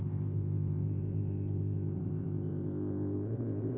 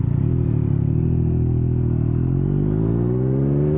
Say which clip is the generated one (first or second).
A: first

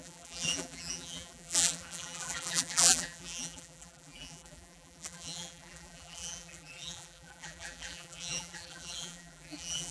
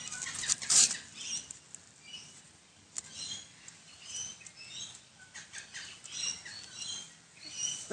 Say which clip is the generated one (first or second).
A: first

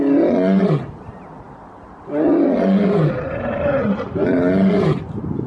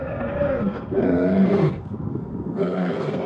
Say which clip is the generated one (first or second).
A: second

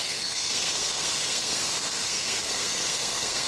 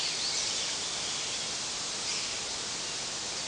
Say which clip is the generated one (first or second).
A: first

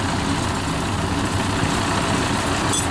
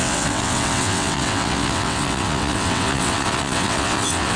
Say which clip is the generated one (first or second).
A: second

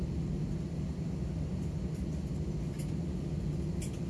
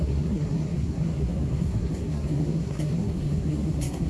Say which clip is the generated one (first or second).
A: second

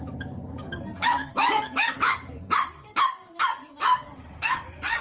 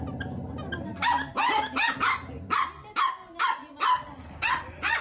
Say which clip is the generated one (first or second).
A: first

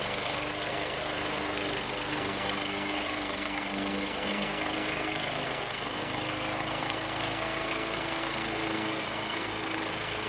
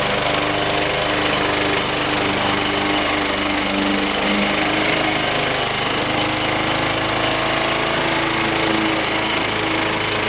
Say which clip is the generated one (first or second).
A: first